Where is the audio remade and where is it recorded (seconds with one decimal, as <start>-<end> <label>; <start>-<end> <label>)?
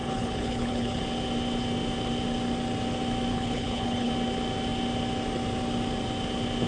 0.0-1.0 remade; 1.0-3.3 recorded; 3.3-4.1 remade; 4.1-6.7 recorded